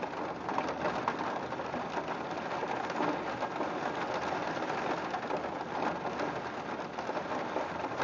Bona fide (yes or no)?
yes